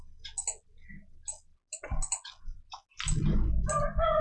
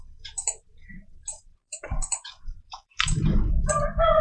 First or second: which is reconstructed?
second